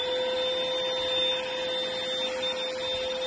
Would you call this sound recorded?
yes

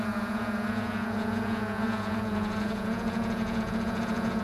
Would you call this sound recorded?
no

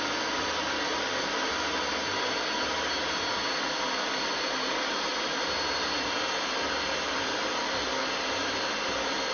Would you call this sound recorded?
yes